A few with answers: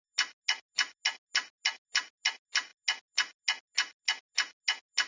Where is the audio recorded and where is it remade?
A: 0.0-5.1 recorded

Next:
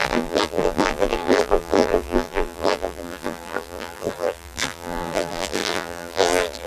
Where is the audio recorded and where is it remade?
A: 0.0-6.7 remade

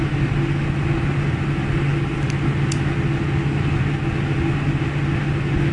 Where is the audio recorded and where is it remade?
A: 0.0-5.7 recorded

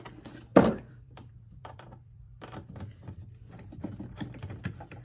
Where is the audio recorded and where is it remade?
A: 0.0-0.5 recorded; 0.5-3.5 remade; 3.5-5.0 recorded